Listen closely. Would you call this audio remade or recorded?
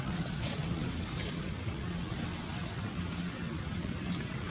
remade